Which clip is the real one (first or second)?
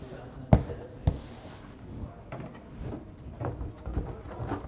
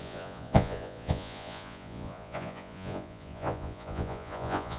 first